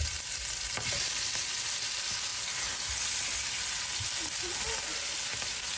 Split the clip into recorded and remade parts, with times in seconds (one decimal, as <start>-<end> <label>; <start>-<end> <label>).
0.0-5.8 recorded